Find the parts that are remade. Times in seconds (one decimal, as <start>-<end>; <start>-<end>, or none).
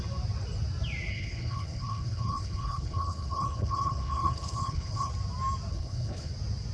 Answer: 1.1-5.1; 5.7-6.3